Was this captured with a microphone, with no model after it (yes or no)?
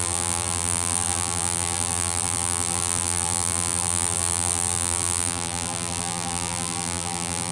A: no